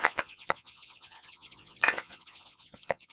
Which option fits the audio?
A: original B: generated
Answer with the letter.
B